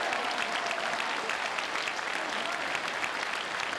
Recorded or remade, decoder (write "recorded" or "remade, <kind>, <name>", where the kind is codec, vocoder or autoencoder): recorded